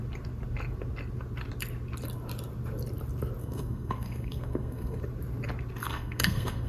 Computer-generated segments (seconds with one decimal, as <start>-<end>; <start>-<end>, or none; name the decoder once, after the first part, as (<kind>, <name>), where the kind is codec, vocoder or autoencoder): 3.4-5.0 (codec, SNAC); 5.8-6.7